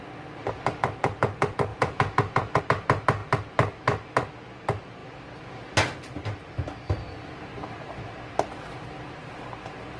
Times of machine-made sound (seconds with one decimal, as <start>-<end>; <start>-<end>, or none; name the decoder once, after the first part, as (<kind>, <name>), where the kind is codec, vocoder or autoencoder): 1.7-2.6 (vocoder, Vocos)